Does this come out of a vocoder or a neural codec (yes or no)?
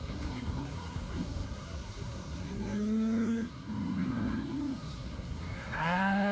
yes